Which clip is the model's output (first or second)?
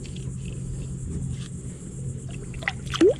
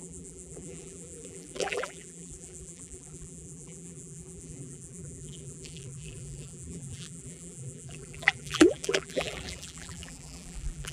second